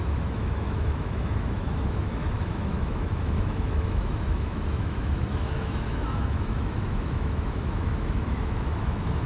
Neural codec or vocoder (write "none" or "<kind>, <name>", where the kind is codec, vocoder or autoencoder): autoencoder, DAC-VAE